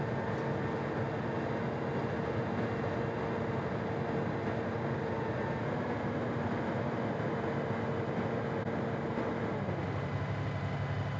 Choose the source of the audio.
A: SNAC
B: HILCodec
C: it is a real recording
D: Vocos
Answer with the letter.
C